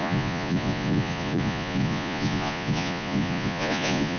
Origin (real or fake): fake